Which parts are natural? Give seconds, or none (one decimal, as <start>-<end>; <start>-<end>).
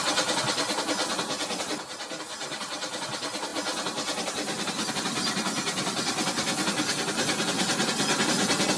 0.0-8.8